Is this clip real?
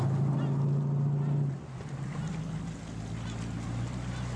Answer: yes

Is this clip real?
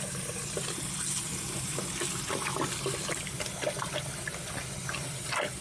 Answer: yes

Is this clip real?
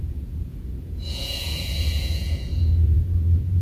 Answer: no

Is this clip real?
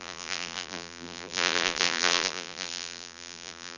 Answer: no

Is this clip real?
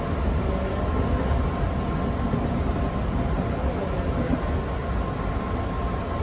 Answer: yes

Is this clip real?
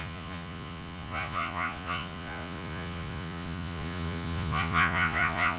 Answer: no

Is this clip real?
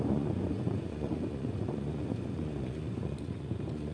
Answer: no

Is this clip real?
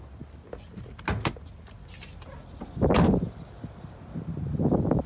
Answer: yes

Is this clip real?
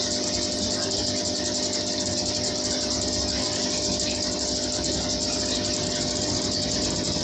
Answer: yes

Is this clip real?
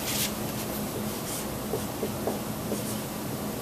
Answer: yes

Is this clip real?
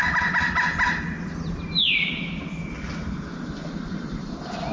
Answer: yes